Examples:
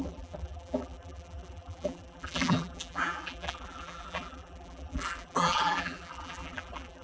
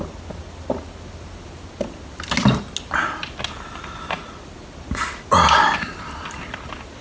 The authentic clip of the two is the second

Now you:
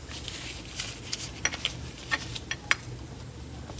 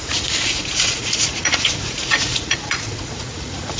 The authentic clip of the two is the first